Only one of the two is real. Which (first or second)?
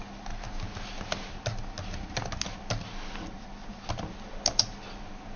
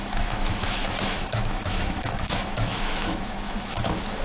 first